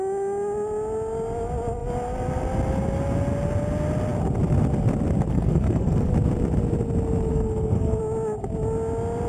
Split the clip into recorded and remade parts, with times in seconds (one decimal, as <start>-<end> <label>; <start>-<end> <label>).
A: 0.0-5.3 recorded; 5.3-6.1 remade; 6.1-7.3 recorded; 7.3-8.0 remade; 8.0-9.3 recorded